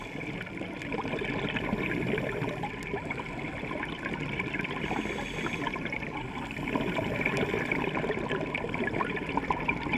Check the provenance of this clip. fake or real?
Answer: real